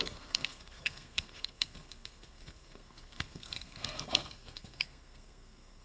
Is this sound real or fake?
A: fake